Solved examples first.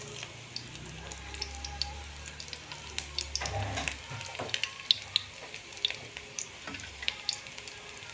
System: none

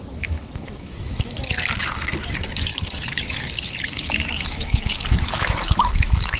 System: autoencoder, DAC-VAE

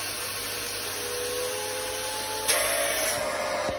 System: none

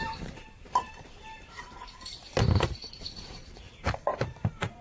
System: vocoder, BigVGAN v2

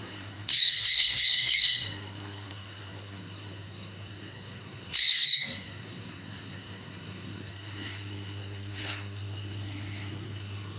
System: codec, SNAC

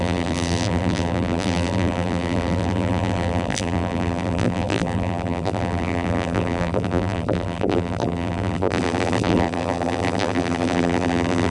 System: vocoder, BigVGAN v2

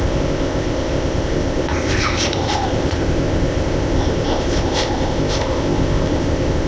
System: codec, ZipCodec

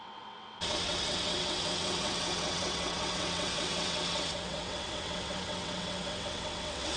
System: vocoder, WaveNeXt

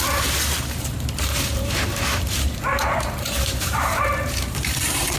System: vocoder, BigVGAN v2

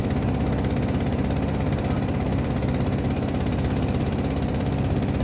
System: vocoder, BigVGAN v2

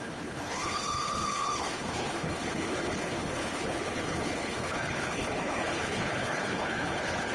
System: codec, HILCodec